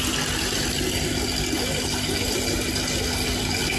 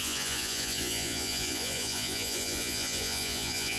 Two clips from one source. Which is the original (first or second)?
first